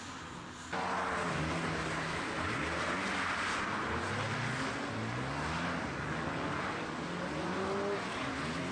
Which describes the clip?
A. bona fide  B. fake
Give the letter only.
A